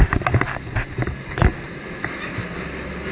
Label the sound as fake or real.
real